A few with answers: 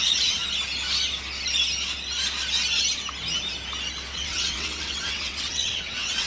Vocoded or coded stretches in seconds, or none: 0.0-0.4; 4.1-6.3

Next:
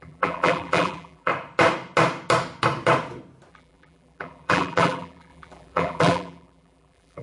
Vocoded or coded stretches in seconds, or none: 0.0-1.3; 3.5-7.2

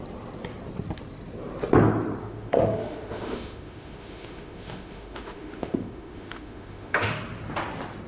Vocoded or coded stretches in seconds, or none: 2.2-7.1